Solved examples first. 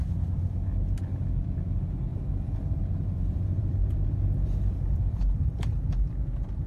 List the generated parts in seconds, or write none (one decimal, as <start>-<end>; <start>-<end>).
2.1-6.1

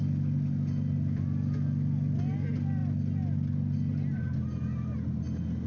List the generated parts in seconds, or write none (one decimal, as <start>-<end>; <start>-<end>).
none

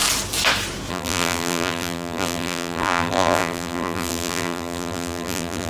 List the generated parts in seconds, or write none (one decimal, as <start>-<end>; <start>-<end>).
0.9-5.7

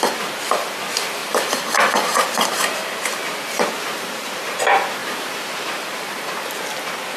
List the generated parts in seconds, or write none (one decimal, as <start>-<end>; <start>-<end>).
1.2-4.6; 5.0-6.6

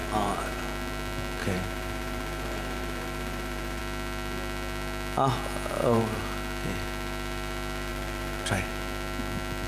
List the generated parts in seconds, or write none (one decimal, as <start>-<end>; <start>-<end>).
0.0-0.6; 1.4-3.8; 5.7-6.2; 7.9-8.7